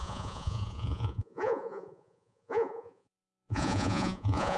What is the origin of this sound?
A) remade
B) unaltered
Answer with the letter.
A